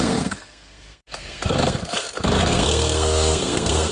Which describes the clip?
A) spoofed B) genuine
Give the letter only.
A